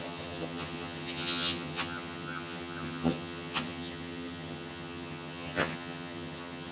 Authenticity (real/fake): fake